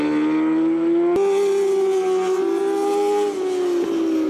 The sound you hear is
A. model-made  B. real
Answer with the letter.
B